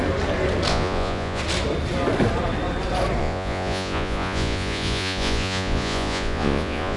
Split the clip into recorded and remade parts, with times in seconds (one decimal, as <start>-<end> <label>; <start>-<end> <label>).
0.0-0.7 recorded; 0.7-1.4 remade; 1.4-3.2 recorded; 3.2-7.0 remade